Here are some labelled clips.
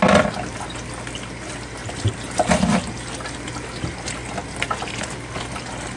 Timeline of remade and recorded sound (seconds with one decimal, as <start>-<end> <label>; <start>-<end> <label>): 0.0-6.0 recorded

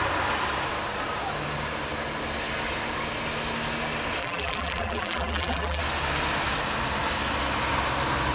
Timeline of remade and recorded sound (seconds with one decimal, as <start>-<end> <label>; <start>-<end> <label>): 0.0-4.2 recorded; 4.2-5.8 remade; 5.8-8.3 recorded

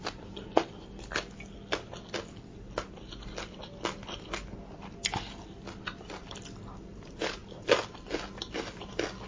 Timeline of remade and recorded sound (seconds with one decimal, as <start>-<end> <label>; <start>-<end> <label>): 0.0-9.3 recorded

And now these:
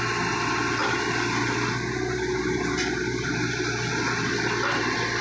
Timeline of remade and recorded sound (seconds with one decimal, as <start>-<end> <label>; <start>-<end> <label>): 0.0-5.2 recorded

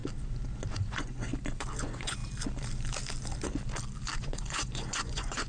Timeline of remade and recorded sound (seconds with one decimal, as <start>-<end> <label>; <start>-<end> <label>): 0.0-0.7 recorded; 0.7-1.3 remade; 1.3-1.8 recorded; 1.8-2.2 remade; 2.2-4.2 recorded; 4.2-5.5 remade

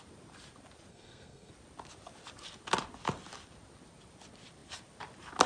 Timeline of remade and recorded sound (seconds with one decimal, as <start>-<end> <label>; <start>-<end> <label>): 0.0-0.9 recorded; 0.9-1.5 remade; 1.5-5.5 recorded